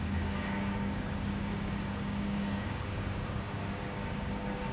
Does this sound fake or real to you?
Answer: fake